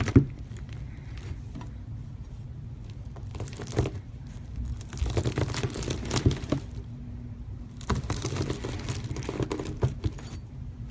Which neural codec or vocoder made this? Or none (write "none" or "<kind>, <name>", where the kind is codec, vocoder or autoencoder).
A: none